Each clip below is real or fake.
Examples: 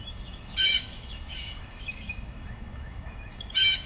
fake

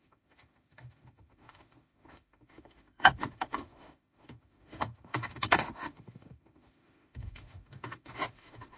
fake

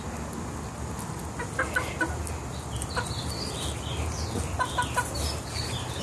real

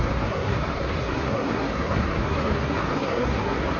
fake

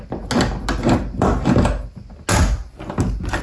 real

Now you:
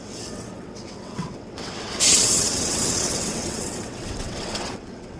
fake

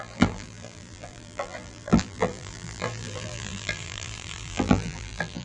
fake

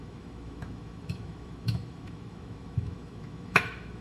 fake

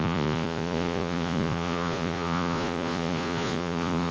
fake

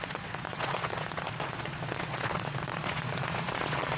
fake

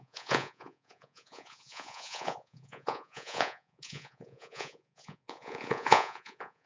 fake